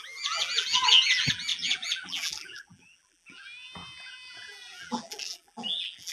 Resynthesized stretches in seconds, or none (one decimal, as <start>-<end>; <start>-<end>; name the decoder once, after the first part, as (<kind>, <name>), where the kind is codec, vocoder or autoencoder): 0.0-6.1 (vocoder, BigVGAN v2)